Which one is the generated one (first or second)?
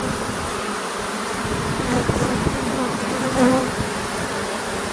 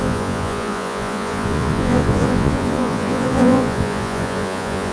second